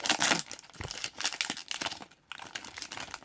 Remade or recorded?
recorded